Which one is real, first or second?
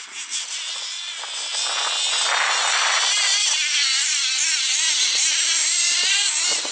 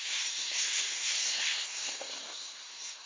first